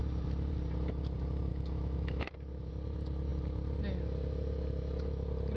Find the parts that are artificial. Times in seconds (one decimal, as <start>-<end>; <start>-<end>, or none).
1.5-2.3